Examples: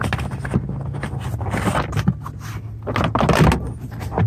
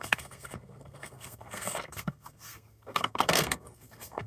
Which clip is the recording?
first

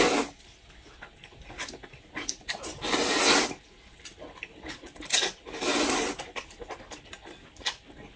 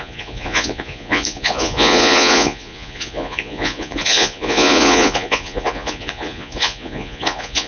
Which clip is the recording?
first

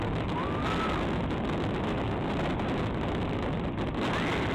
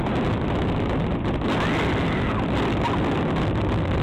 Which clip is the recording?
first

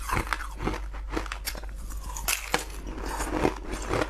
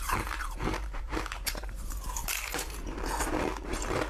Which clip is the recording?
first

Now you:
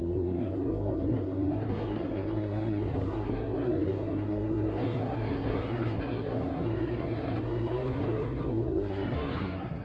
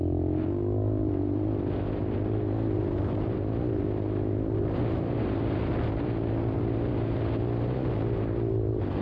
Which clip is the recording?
second